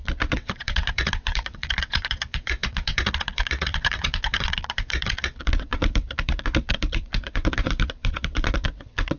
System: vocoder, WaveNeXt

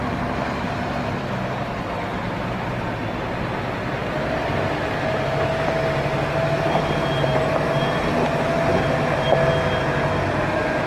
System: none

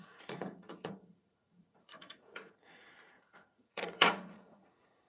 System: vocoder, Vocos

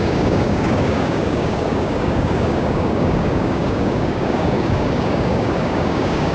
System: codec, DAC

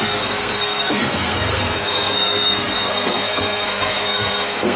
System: codec, SNAC